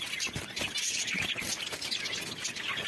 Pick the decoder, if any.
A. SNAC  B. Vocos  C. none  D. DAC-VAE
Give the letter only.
C